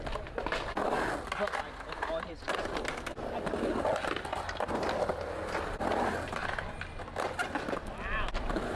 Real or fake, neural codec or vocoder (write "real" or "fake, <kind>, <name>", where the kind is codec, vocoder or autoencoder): real